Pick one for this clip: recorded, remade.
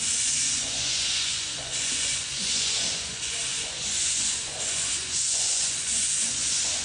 remade